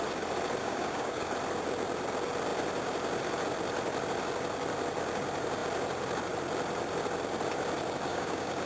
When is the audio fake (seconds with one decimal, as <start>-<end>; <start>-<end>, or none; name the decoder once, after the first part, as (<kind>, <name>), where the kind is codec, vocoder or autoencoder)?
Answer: 0.6-1.3 (codec, DAC); 8.1-8.7